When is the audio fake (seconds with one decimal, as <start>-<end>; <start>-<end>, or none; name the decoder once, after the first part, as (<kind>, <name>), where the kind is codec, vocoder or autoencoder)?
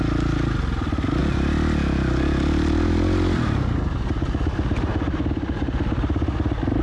0.0-1.2 (vocoder, BigVGAN v2); 5.3-6.8